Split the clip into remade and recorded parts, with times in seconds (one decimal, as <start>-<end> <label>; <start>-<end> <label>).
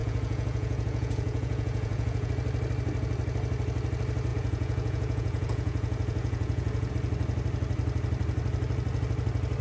0.0-2.3 remade; 2.3-4.3 recorded; 4.3-6.9 remade; 6.9-9.6 recorded